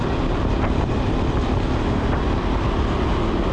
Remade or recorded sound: recorded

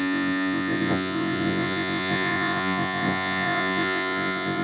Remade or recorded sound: remade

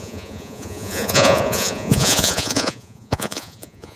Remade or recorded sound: remade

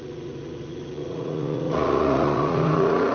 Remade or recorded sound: remade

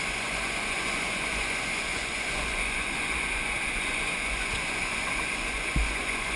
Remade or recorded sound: remade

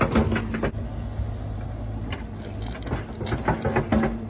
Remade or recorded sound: recorded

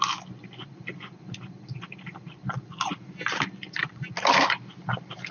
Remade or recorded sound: recorded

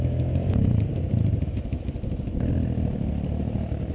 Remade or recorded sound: recorded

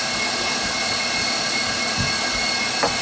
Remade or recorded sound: recorded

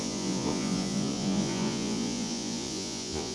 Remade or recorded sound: remade